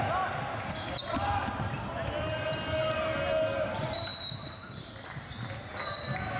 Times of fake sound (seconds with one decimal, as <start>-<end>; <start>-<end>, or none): none